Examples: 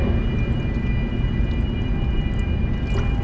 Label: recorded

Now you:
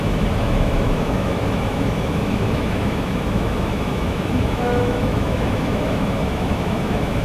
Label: remade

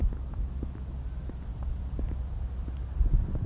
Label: recorded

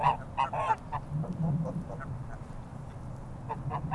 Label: recorded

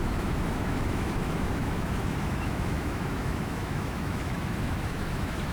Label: remade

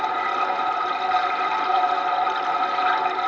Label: recorded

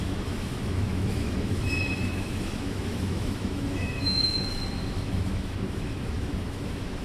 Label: remade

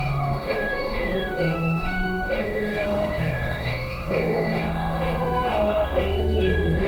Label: remade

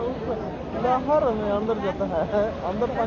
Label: recorded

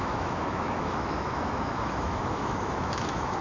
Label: remade